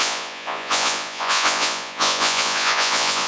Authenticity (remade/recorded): remade